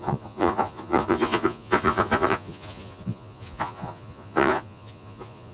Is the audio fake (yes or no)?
yes